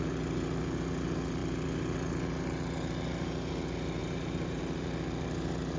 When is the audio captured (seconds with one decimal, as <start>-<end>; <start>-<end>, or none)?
0.0-4.0; 4.6-5.8